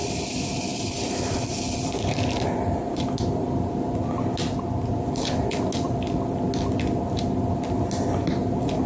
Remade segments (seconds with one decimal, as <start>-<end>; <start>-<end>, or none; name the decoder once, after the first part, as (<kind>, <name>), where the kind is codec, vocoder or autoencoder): 0.0-3.2 (vocoder, BigVGAN v2)